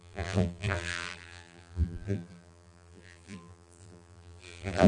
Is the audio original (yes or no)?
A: no